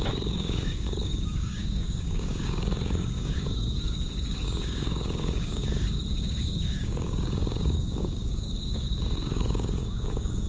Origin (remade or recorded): remade